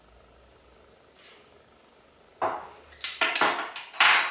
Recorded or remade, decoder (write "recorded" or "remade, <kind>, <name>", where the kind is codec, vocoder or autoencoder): recorded